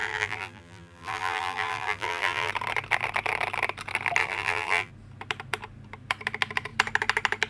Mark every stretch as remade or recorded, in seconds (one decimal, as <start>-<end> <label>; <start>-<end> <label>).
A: 0.0-2.5 remade; 2.5-4.2 recorded; 4.2-4.9 remade; 4.9-7.5 recorded

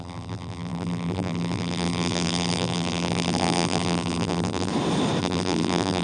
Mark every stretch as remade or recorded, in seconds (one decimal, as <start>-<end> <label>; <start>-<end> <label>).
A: 0.0-4.7 remade; 4.7-5.2 recorded; 5.2-6.0 remade

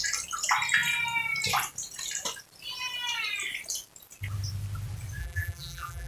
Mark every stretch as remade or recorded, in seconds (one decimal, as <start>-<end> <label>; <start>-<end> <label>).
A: 0.0-5.2 recorded; 5.2-6.1 remade

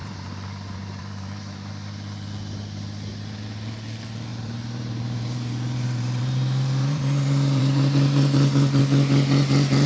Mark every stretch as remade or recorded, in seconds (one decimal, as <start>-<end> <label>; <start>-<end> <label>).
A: 0.0-1.7 remade; 1.7-4.3 recorded; 4.3-8.8 remade; 8.8-9.9 recorded